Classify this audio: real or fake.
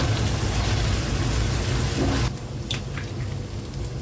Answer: real